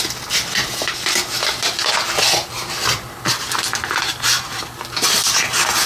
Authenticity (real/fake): real